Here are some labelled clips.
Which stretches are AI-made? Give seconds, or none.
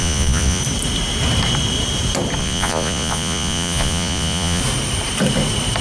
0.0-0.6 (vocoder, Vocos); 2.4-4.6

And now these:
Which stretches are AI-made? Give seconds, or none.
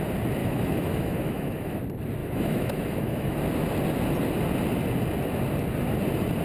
0.4-1.8 (autoencoder, DAC-VAE); 2.2-3.4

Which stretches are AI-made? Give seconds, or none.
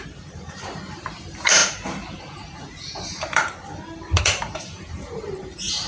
0.0-5.9 (vocoder, BigVGAN v2)